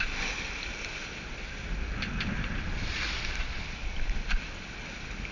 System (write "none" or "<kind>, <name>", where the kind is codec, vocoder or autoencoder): none